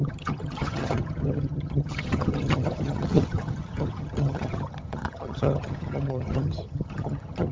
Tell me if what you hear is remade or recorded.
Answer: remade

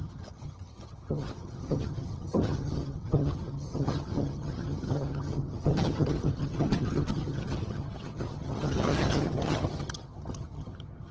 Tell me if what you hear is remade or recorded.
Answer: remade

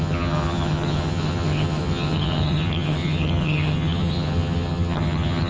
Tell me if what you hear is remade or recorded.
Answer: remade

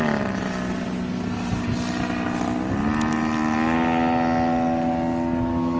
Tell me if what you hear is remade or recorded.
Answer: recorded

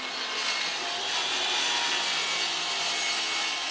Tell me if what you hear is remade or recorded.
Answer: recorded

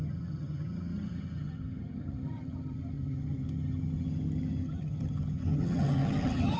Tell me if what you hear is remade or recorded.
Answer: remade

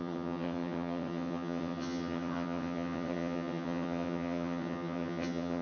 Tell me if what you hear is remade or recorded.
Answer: remade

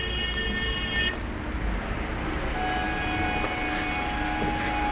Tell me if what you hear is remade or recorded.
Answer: recorded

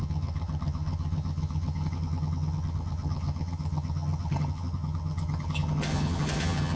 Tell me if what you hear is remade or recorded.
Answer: remade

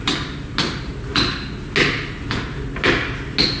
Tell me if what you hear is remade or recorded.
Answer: recorded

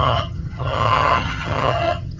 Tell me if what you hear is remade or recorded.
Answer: remade